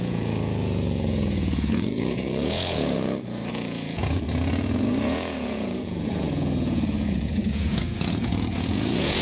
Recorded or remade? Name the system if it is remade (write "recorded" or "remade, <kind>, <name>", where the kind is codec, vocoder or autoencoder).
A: remade, vocoder, Vocos